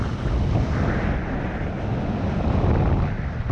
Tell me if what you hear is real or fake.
real